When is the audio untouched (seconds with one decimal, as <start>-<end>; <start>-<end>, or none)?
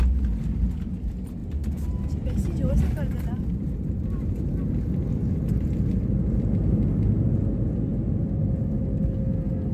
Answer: 0.0-9.7